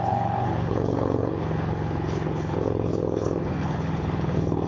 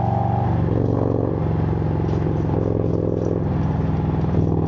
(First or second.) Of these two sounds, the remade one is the first